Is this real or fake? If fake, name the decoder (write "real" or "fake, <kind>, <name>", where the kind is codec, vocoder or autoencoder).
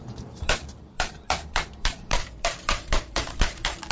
fake, vocoder, BigVGAN v2